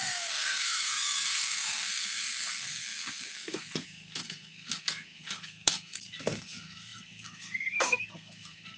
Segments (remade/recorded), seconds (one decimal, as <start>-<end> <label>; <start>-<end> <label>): 0.0-8.8 remade